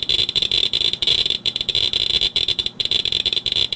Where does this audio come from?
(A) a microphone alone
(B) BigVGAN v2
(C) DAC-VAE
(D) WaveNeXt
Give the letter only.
B